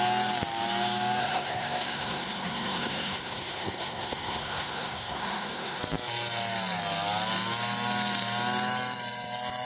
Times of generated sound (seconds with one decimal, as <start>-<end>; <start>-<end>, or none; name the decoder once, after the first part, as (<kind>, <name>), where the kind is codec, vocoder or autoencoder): 1.2-5.8 (codec, SNAC)